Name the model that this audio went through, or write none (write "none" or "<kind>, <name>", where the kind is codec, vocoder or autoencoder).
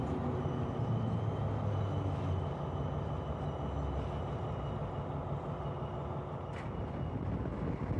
none